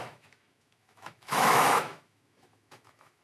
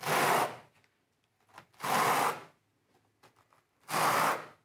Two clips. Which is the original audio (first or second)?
second